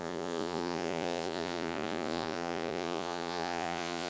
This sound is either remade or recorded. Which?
remade